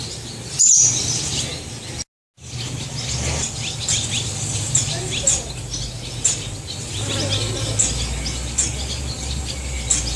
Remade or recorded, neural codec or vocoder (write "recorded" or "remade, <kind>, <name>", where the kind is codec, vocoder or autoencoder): recorded